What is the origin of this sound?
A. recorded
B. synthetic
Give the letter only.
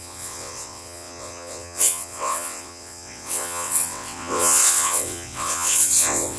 B